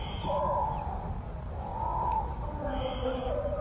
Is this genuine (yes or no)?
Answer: yes